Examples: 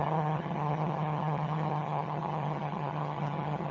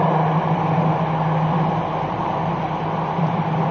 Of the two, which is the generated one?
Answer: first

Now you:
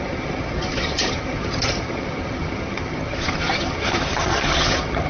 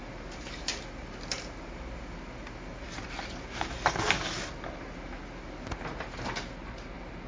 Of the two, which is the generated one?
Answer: first